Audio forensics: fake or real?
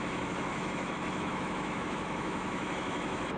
fake